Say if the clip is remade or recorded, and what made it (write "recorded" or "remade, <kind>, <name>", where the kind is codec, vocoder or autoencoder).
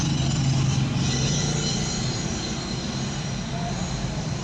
recorded